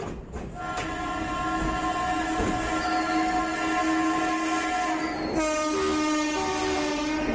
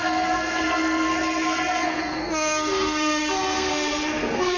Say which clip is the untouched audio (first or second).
first